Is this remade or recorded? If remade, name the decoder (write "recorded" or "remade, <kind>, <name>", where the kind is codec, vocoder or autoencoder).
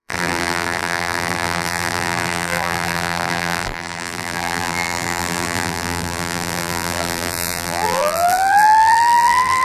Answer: remade, vocoder, BigVGAN v2